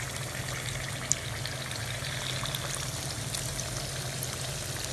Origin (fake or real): real